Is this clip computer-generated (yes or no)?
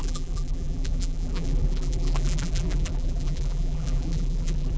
yes